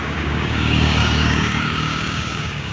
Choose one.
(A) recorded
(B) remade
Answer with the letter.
B